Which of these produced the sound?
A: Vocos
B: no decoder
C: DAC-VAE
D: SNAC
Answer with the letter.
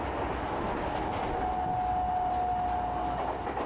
B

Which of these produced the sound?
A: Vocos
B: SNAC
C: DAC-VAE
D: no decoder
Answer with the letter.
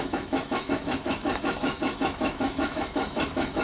C